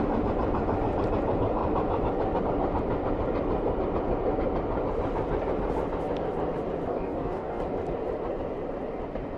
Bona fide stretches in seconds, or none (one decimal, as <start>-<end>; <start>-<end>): 0.0-6.9; 7.6-9.4